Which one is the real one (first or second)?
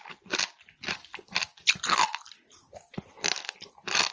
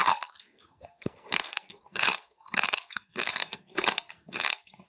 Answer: first